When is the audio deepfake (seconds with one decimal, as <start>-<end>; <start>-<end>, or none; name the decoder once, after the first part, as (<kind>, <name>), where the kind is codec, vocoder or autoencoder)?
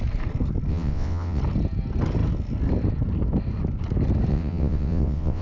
0.7-1.4 (vocoder, WaveNeXt); 4.3-5.4